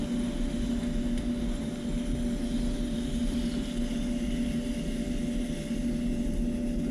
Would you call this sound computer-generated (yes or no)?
no